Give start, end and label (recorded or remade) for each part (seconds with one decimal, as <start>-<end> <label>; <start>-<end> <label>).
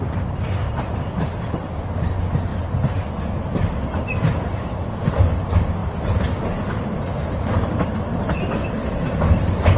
0.0-5.8 recorded; 5.8-6.8 remade; 6.8-8.1 recorded; 8.1-8.7 remade; 8.7-9.8 recorded